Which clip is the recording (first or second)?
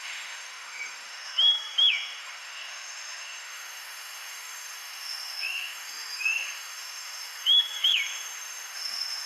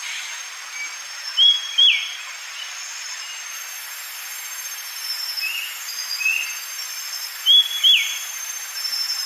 second